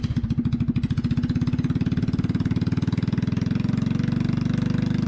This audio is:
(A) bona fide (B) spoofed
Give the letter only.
A